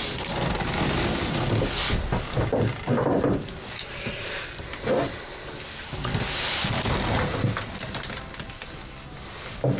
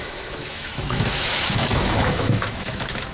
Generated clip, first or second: second